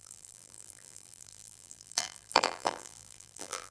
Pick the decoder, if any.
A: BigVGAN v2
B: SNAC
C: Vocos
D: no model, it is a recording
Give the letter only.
A